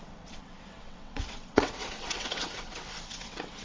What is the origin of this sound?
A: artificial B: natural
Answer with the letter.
A